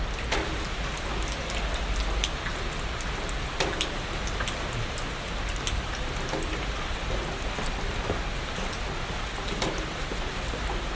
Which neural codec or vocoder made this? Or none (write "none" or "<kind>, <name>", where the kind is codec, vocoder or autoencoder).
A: none